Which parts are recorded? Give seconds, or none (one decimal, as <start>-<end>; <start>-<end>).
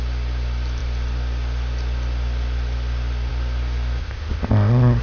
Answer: 0.0-4.0